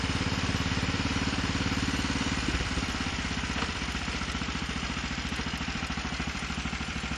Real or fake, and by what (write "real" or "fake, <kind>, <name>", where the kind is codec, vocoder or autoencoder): fake, vocoder, BigVGAN v2